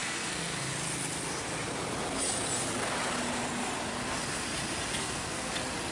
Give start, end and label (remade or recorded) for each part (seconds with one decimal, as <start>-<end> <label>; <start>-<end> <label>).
0.0-0.7 remade; 0.7-4.9 recorded; 4.9-5.5 remade; 5.5-5.9 recorded